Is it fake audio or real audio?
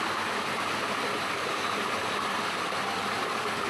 real